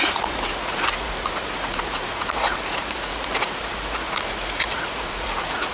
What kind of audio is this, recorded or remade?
remade